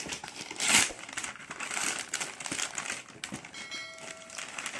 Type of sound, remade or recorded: recorded